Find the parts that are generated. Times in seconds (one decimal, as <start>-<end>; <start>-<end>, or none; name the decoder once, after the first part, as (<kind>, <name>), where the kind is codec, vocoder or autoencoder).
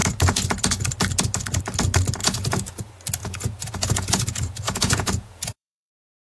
2.2-2.8 (vocoder, Vocos); 3.2-5.9